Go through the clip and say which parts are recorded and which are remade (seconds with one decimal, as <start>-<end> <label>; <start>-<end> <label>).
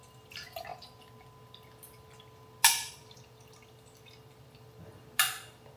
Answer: 0.0-5.8 recorded